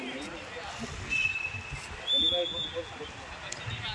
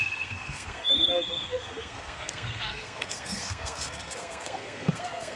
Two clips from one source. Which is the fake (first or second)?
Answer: second